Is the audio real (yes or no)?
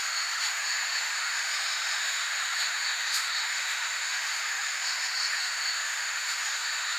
no